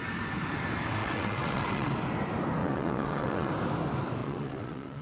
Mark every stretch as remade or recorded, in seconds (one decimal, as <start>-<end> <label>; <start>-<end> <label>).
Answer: 0.0-1.0 recorded; 1.0-1.9 remade; 1.9-2.6 recorded; 2.6-3.5 remade; 3.5-4.2 recorded; 4.2-5.0 remade